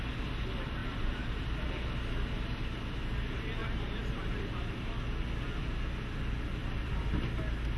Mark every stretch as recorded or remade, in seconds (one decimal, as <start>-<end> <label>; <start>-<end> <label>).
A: 0.0-0.8 recorded; 0.8-1.7 remade; 1.7-3.6 recorded; 3.6-4.9 remade; 4.9-6.6 recorded; 6.6-7.2 remade; 7.2-7.8 recorded